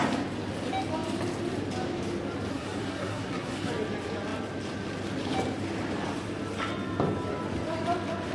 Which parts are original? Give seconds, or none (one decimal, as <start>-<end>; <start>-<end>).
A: 0.0-2.5; 3.7-8.3